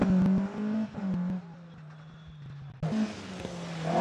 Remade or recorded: recorded